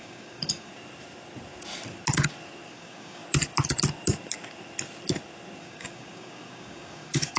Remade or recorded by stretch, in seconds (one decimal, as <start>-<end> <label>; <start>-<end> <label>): 0.0-0.7 remade; 0.7-2.7 recorded; 2.7-3.2 remade; 3.2-5.6 recorded; 5.6-7.4 remade